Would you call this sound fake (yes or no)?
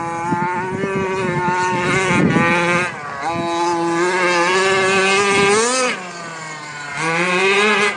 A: no